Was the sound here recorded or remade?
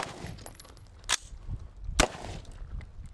recorded